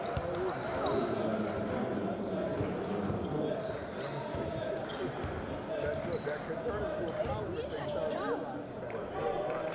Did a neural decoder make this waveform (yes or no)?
no